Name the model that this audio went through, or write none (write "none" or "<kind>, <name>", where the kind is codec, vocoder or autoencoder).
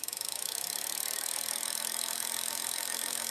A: autoencoder, DAC-VAE